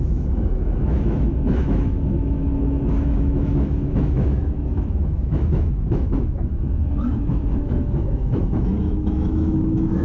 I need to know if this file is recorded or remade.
remade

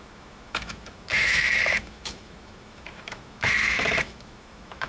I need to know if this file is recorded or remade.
remade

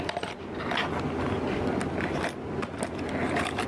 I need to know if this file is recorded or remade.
recorded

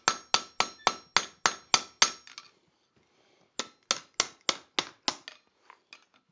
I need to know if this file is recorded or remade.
recorded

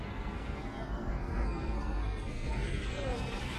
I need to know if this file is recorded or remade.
remade